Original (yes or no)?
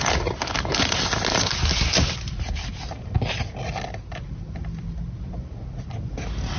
yes